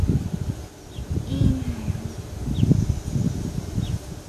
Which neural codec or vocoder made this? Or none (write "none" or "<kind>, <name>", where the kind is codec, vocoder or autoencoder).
none